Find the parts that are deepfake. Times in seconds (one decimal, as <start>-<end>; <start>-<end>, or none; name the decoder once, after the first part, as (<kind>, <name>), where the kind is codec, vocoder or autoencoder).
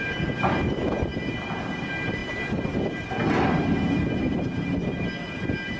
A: none